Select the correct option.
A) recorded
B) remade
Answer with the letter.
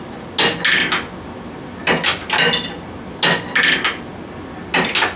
A